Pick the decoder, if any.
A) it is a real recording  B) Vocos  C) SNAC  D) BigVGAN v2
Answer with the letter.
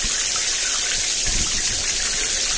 A